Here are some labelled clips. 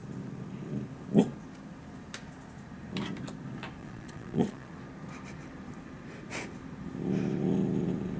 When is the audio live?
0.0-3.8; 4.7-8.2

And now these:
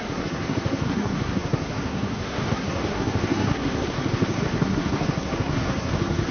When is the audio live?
none

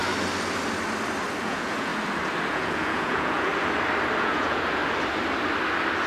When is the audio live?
0.0-1.4; 1.9-2.5; 3.5-4.2; 4.8-6.1

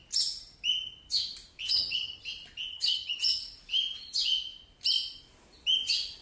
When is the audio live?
0.0-1.7; 2.2-2.7; 3.4-6.2

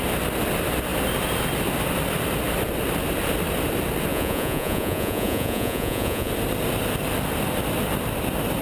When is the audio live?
0.0-4.1; 6.3-8.6

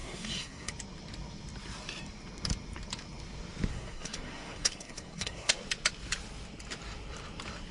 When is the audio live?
0.7-3.7; 5.5-7.7